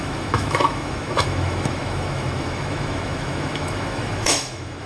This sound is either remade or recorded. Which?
remade